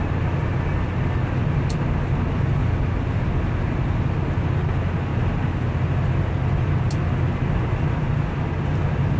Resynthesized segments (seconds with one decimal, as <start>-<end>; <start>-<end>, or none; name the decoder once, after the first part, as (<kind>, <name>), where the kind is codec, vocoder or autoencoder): none